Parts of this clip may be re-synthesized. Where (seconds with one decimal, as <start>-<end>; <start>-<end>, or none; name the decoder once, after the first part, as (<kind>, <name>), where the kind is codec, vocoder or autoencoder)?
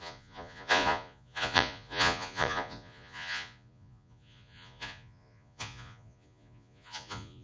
0.0-7.4 (vocoder, Vocos)